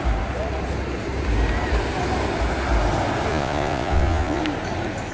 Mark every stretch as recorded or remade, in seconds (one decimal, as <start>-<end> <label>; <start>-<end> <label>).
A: 0.0-3.3 recorded; 3.3-4.4 remade; 4.4-5.1 recorded

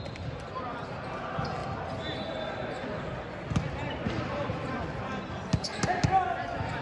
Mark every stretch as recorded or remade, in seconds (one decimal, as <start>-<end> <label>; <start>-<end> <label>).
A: 0.0-6.8 recorded

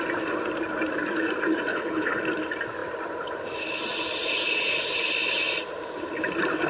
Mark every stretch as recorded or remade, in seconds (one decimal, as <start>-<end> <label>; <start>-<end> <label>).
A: 0.0-1.7 recorded; 1.7-2.2 remade; 2.2-6.7 recorded

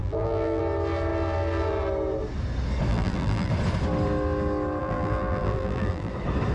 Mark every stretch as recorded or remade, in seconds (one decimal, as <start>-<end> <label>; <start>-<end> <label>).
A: 0.0-0.6 remade; 0.6-2.9 recorded; 2.9-3.5 remade; 3.5-4.8 recorded; 4.8-6.1 remade; 6.1-6.5 recorded

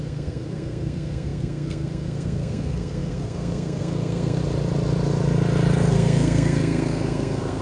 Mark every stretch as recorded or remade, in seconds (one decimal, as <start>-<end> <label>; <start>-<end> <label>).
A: 0.0-4.4 remade; 4.4-5.9 recorded; 5.9-7.6 remade

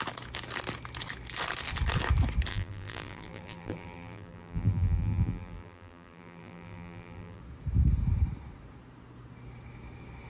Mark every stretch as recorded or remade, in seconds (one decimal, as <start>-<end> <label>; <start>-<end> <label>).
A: 0.0-2.5 recorded; 2.5-7.4 remade; 7.4-10.3 recorded

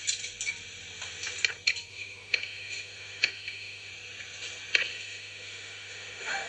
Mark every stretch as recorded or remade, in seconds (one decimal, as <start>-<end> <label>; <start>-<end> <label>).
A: 0.0-1.9 recorded; 1.9-3.9 remade; 3.9-4.9 recorded; 4.9-6.5 remade

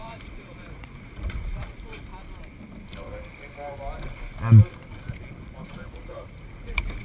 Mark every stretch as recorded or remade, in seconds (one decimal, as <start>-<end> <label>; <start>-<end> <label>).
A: 0.0-2.1 remade; 2.1-5.4 recorded; 5.4-7.0 remade